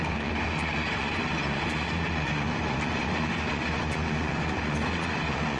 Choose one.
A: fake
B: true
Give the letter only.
A